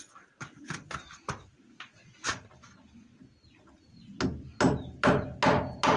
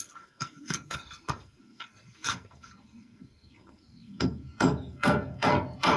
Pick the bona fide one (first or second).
first